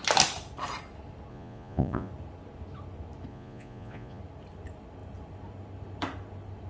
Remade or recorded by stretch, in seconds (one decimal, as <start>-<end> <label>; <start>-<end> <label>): 0.0-1.3 recorded; 1.3-2.1 remade; 2.1-3.3 recorded; 3.3-4.2 remade; 4.2-6.7 recorded